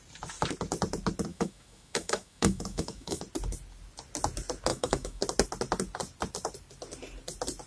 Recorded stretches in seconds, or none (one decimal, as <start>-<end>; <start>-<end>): 0.0-1.3; 3.2-4.7; 5.2-7.7